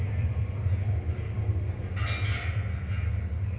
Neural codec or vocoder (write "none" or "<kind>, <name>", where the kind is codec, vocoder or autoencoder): none